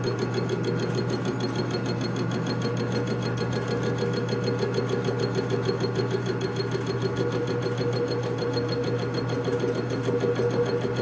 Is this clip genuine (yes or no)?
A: yes